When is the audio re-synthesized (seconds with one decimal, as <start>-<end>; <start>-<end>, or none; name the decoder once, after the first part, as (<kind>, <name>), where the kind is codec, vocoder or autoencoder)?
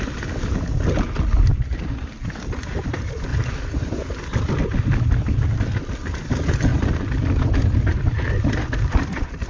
3.3-4.5 (vocoder, BigVGAN v2); 6.7-7.2; 7.9-9.5